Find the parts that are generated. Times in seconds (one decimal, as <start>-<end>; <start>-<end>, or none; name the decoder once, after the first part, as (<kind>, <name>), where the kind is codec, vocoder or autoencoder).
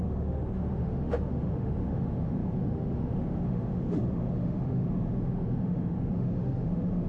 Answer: 0.0-7.1 (autoencoder, DAC-VAE)